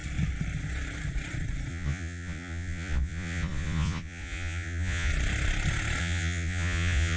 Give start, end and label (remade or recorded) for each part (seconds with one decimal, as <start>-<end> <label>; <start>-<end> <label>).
0.0-1.7 recorded; 1.7-5.1 remade; 5.1-6.0 recorded; 6.0-7.2 remade